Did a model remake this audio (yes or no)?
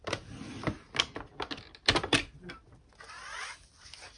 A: no